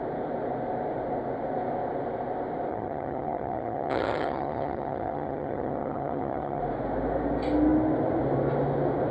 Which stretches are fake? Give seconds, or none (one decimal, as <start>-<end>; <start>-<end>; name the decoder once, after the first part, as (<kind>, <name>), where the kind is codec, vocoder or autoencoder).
2.7-6.6 (vocoder, HiFi-GAN)